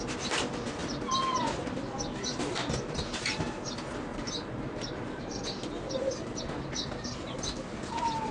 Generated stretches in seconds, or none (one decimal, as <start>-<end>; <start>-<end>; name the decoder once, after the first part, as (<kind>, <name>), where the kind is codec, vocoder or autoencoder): 4.1-6.4 (vocoder, BigVGAN v2)